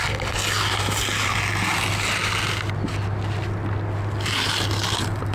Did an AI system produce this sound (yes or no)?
no